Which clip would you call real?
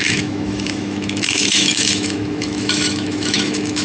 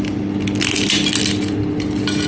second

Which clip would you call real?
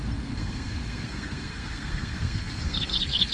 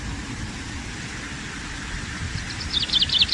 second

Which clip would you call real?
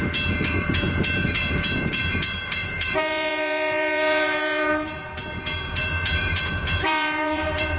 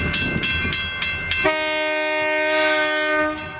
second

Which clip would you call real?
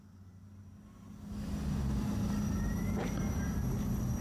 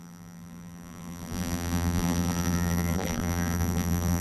first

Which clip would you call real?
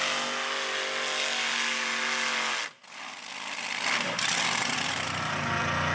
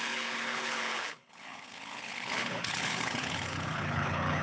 first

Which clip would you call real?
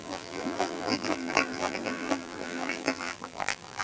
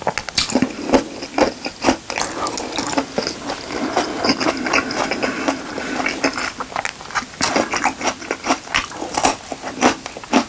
second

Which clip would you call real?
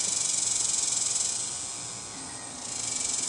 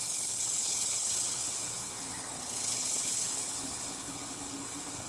first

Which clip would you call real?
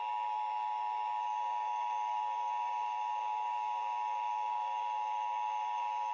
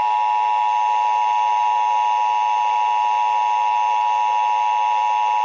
second